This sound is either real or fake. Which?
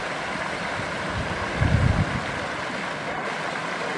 real